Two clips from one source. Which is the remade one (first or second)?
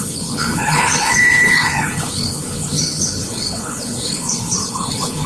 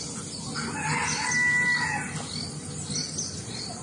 first